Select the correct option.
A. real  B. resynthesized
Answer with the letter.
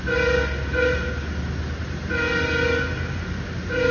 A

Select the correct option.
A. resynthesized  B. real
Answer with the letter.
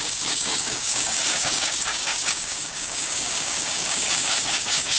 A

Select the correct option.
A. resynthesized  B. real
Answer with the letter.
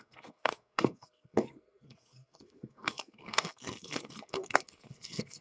A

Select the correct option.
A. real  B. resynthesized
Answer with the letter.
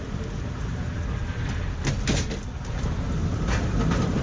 A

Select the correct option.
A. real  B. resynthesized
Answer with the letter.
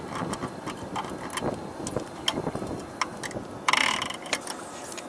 A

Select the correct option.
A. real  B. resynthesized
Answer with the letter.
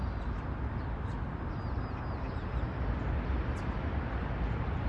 A